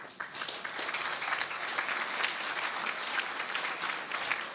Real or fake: real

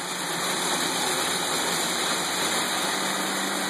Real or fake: real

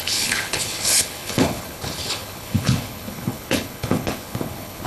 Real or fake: fake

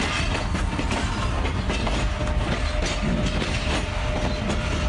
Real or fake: real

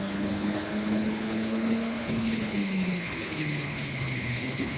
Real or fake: fake